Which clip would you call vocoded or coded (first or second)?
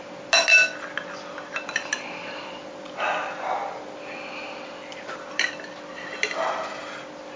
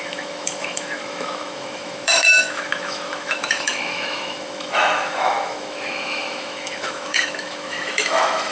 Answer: second